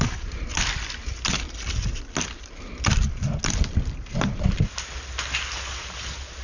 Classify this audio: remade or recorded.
recorded